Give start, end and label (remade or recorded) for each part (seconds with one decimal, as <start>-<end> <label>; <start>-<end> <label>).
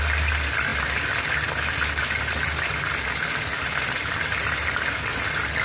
0.0-5.6 recorded